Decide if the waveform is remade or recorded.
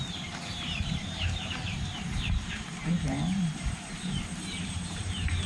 remade